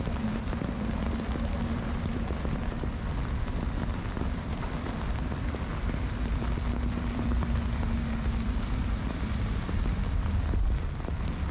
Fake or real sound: fake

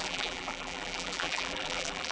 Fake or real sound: fake